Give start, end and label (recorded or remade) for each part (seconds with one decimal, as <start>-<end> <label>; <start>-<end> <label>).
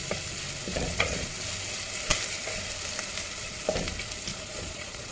0.0-0.7 recorded; 0.7-1.3 remade; 1.3-4.3 recorded; 4.3-5.1 remade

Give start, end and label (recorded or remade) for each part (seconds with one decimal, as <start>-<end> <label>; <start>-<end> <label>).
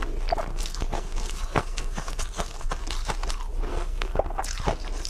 0.0-0.5 recorded; 0.5-2.7 remade; 2.7-3.7 recorded; 3.7-4.4 remade; 4.4-5.1 recorded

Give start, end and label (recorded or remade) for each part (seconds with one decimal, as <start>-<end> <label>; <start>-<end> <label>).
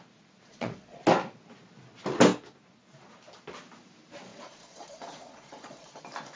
0.0-0.5 recorded; 0.5-1.0 remade; 1.0-4.3 recorded; 4.3-6.0 remade; 6.0-6.4 recorded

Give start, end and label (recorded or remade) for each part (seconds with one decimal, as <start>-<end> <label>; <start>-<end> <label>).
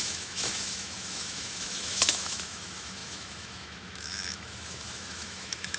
0.0-5.8 remade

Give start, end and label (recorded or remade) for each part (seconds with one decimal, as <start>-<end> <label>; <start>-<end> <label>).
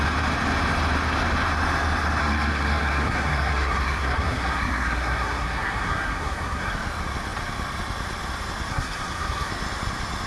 0.0-2.2 recorded; 2.2-6.7 remade; 6.7-8.7 recorded; 8.7-9.5 remade; 9.5-10.3 recorded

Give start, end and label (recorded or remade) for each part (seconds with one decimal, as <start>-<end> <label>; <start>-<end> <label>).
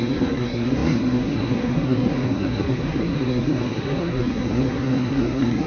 0.0-5.7 remade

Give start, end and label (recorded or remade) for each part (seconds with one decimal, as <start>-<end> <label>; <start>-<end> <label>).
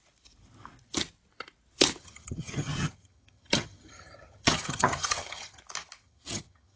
0.0-2.0 recorded; 2.0-5.6 remade; 5.6-6.0 recorded; 6.0-6.8 remade